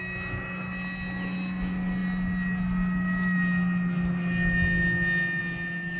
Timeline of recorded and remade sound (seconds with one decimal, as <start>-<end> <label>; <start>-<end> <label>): 0.0-6.0 recorded